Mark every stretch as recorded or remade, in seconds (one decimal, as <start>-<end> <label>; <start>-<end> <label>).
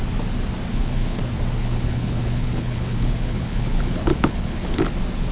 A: 0.0-0.7 recorded; 0.7-1.2 remade; 1.2-1.6 recorded; 1.6-4.8 remade; 4.8-5.3 recorded